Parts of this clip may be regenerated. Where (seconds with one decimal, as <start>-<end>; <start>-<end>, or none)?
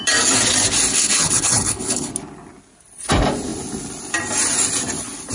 0.9-2.1